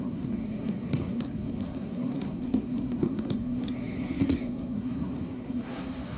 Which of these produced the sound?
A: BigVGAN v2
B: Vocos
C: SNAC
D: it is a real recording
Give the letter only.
C